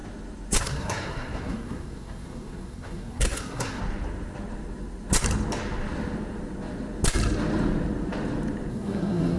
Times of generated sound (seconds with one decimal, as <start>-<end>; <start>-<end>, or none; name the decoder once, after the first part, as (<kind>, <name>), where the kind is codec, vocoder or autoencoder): 0.6-3.8 (codec, SNAC); 8.7-9.4